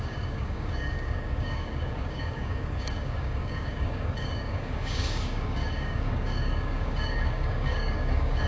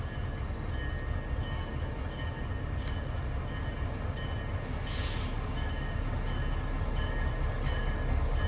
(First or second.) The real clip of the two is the second